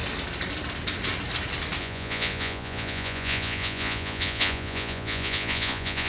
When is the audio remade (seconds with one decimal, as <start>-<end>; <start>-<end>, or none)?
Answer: 1.8-6.1

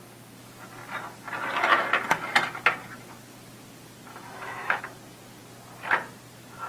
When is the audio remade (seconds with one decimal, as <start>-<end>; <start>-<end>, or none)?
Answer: 4.1-4.8

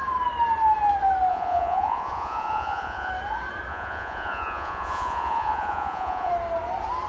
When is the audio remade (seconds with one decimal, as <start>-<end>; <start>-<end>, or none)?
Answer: 1.3-3.1; 3.7-6.3

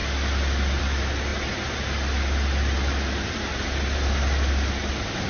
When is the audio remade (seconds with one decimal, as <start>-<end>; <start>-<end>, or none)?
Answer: none

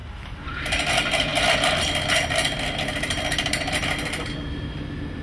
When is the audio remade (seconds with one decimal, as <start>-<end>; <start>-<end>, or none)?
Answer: none